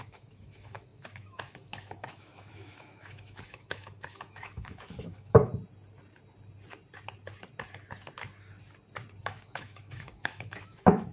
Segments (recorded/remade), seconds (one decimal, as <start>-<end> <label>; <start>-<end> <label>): 0.0-5.5 remade; 5.5-9.2 recorded; 9.2-11.1 remade